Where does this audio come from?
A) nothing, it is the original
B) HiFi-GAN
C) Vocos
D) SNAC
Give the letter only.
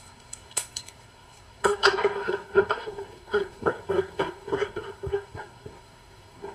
D